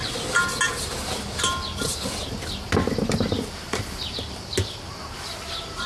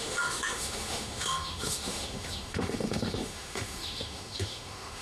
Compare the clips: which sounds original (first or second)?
first